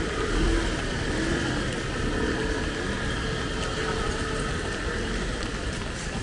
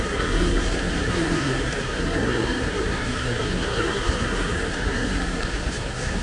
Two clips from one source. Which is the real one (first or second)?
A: first